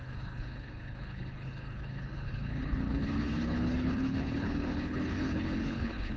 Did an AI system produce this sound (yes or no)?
yes